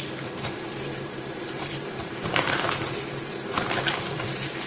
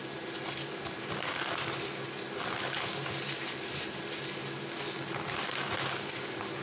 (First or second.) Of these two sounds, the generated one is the first